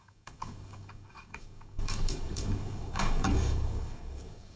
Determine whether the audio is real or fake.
fake